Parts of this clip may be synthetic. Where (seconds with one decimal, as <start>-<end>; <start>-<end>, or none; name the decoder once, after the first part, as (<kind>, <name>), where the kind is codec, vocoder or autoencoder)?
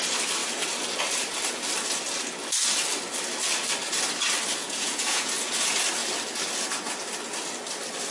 4.6-5.3 (vocoder, Vocos)